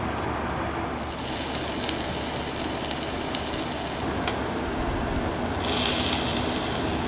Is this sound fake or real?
real